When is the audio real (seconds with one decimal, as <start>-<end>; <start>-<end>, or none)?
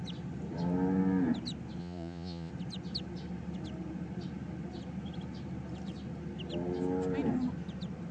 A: 0.0-1.8; 2.5-8.1